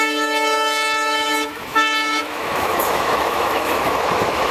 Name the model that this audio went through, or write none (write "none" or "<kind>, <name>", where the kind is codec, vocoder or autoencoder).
autoencoder, DAC-VAE